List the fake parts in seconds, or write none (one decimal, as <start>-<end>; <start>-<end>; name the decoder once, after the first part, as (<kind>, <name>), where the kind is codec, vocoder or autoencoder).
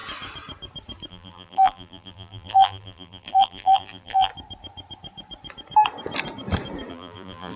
1.1-4.3 (vocoder, BigVGAN v2); 6.9-7.6